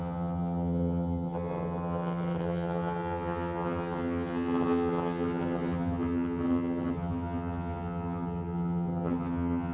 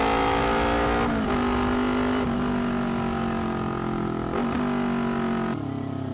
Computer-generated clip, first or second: first